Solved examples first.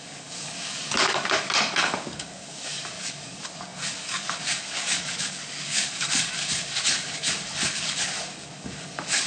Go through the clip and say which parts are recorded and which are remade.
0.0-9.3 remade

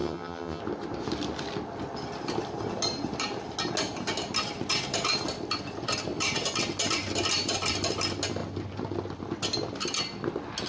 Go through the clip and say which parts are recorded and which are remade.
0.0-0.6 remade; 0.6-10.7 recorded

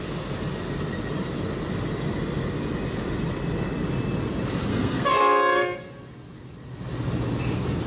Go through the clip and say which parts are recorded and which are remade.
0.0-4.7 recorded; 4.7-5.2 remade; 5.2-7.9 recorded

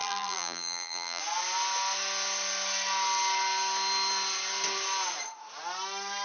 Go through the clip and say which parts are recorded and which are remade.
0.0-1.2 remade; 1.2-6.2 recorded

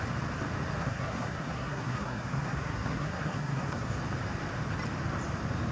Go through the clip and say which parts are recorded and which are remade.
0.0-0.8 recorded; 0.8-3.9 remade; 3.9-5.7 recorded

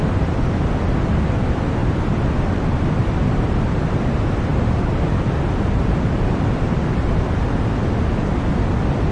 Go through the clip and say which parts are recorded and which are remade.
0.0-1.8 recorded; 1.8-3.1 remade; 3.1-4.5 recorded; 4.5-8.5 remade; 8.5-9.1 recorded

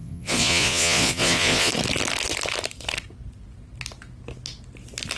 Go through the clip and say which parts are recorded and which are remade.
0.0-1.7 remade; 1.7-5.2 recorded

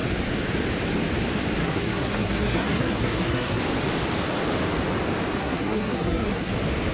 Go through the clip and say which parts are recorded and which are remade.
0.0-1.6 recorded; 1.6-3.6 remade; 3.6-5.4 recorded; 5.4-6.5 remade; 6.5-6.9 recorded